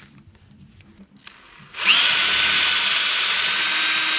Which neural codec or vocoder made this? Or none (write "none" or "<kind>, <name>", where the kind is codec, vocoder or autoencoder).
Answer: none